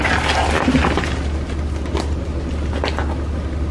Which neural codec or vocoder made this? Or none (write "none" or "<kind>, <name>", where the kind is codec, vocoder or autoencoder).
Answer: none